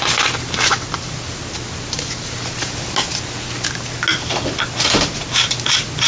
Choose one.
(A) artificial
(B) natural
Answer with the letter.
B